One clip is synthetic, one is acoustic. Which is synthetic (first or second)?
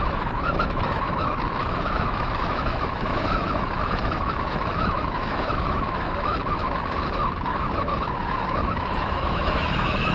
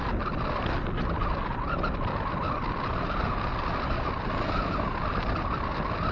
first